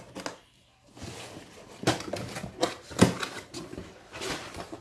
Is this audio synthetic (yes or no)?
no